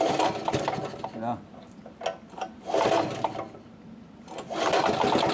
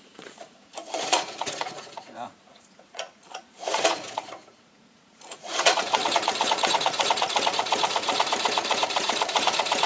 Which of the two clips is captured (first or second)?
first